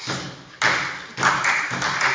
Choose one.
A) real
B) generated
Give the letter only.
A